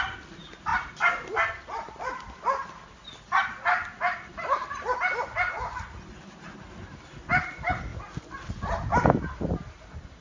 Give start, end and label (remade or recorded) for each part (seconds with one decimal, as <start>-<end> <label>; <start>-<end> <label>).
0.0-10.2 recorded